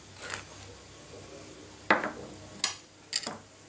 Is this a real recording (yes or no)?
yes